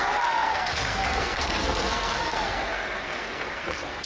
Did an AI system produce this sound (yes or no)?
yes